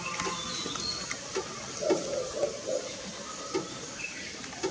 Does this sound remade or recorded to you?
recorded